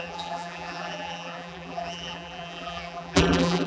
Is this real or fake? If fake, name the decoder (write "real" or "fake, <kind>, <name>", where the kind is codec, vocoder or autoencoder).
fake, vocoder, BigVGAN v2